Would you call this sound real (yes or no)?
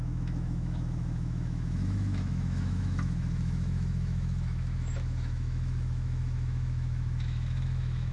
no